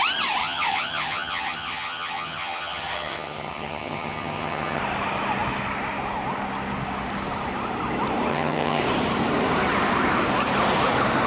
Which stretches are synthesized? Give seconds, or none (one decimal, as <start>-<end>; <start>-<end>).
0.4-4.8; 8.3-8.8